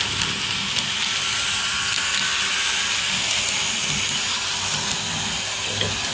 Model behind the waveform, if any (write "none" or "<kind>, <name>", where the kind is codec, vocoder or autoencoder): none